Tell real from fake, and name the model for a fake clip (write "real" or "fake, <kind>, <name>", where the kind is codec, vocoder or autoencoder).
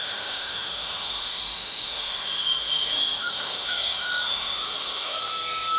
fake, autoencoder, DAC-VAE